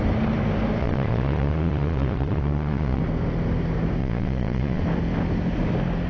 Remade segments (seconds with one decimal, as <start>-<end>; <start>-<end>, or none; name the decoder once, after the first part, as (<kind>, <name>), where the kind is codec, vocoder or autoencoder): 0.8-3.0 (vocoder, Vocos); 4.0-4.8